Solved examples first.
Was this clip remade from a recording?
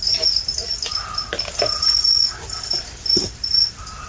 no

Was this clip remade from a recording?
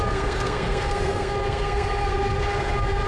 yes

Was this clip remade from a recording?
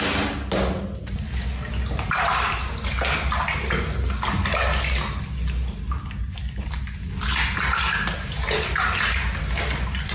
no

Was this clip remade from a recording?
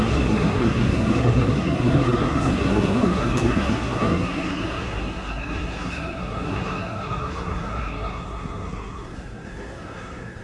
yes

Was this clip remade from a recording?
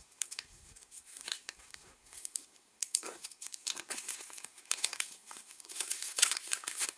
yes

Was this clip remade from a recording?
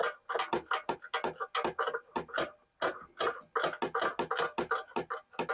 no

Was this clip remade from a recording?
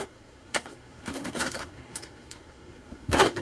yes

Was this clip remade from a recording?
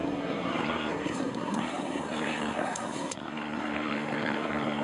yes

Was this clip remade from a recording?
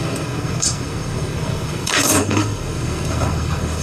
yes